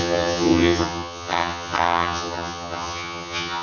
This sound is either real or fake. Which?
fake